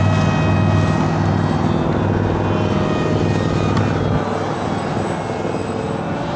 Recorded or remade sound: recorded